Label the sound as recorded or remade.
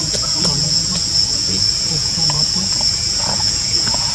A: remade